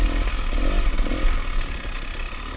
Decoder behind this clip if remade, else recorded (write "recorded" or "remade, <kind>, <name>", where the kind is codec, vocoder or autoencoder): recorded